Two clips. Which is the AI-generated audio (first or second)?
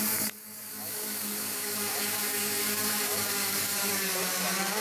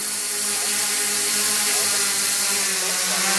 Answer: first